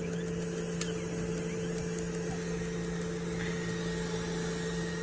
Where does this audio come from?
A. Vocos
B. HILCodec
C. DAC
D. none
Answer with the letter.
D